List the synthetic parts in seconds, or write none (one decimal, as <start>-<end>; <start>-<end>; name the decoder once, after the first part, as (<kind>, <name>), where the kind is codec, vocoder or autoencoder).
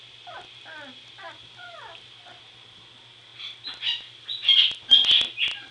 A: none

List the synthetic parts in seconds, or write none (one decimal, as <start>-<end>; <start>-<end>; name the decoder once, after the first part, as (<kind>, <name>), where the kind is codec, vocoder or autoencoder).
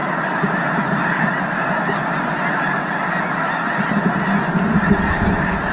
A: none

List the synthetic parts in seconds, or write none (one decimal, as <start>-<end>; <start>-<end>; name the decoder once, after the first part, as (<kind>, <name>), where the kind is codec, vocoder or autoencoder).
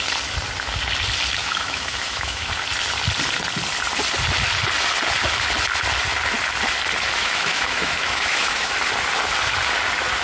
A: 1.4-2.5 (autoencoder, DAC-VAE); 7.2-8.7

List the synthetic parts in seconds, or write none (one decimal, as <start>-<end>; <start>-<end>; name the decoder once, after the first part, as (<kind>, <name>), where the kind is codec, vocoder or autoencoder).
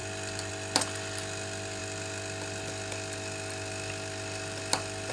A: none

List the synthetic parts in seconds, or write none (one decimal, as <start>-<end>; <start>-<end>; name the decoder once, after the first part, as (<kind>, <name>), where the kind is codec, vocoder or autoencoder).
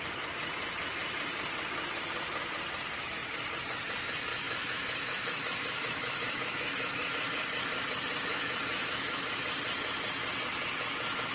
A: 4.3-7.1 (autoencoder, DAC-VAE); 8.3-9.2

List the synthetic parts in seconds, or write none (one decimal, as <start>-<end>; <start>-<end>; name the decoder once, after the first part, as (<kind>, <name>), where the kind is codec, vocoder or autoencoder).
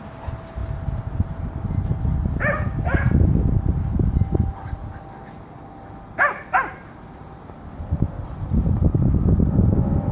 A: none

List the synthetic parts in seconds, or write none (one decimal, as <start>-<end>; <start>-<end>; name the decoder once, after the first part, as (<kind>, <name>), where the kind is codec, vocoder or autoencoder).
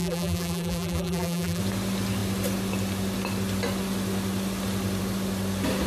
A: 0.0-1.6 (vocoder, BigVGAN v2)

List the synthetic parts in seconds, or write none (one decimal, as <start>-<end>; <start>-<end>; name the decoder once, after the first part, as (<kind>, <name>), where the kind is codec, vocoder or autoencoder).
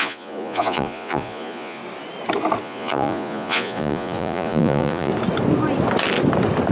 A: 0.0-1.8 (vocoder, Vocos); 2.6-5.1